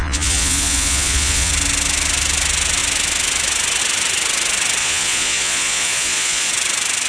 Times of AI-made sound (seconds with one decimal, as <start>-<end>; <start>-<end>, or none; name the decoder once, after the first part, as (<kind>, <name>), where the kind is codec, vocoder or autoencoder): 0.0-1.5 (vocoder, Vocos); 4.8-6.5

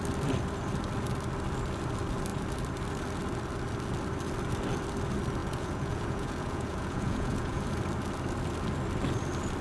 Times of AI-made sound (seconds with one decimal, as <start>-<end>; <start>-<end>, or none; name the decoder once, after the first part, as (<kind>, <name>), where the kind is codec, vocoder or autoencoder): 5.4-7.6 (vocoder, Vocos)

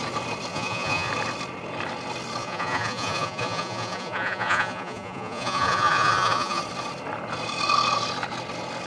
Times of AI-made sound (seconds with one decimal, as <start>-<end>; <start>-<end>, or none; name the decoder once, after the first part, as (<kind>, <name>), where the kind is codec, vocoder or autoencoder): 0.5-1.1 (vocoder, Vocos); 2.4-6.6

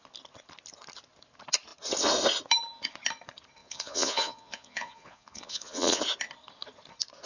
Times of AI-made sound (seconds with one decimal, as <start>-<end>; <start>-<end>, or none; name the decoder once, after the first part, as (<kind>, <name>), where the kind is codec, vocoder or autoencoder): 3.6-6.0 (vocoder, Vocos)

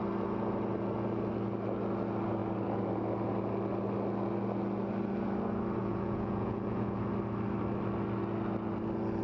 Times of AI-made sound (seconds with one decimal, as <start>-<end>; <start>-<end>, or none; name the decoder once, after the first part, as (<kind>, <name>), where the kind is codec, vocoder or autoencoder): 5.8-7.0 (vocoder, Vocos)

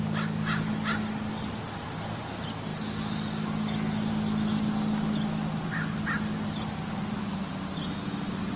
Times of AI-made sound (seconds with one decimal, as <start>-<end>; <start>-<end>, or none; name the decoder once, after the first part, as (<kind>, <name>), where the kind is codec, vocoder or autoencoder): none